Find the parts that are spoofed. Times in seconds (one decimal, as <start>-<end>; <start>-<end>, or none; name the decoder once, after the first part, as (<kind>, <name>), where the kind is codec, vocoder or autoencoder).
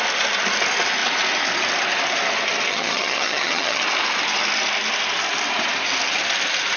2.7-3.8 (vocoder, HiFi-GAN)